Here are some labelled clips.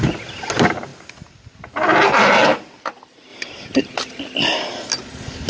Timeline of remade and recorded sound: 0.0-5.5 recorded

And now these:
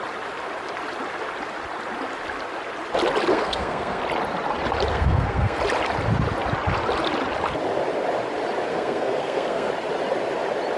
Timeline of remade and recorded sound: 0.0-3.3 recorded; 3.3-4.0 remade; 4.0-4.9 recorded; 4.9-5.6 remade; 5.6-8.7 recorded; 8.7-9.7 remade; 9.7-10.8 recorded

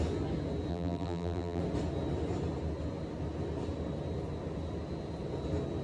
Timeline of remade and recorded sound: 0.0-0.7 recorded; 0.7-1.6 remade; 1.6-5.8 recorded

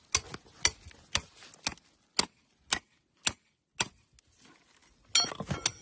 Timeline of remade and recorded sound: 0.0-5.8 recorded